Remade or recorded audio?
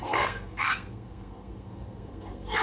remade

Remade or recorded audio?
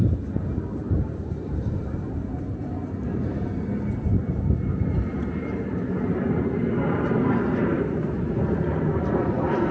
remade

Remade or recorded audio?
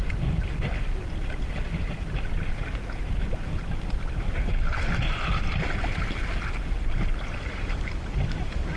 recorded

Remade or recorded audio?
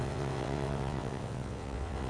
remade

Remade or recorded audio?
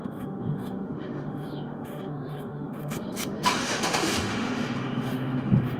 remade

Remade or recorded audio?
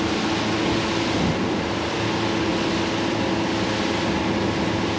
recorded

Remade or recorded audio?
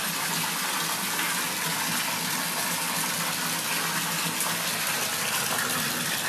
recorded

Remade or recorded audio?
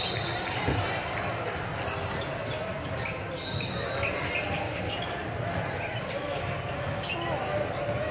recorded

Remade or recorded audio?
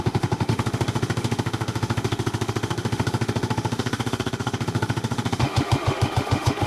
remade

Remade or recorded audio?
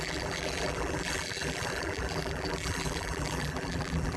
remade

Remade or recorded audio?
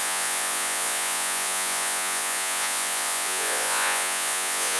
remade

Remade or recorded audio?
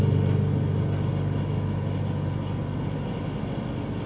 recorded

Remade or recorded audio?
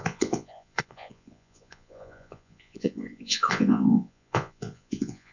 remade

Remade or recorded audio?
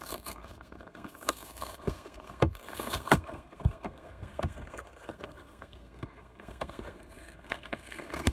remade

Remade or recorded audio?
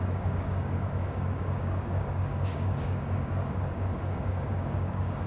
remade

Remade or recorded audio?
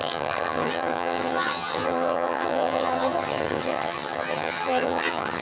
remade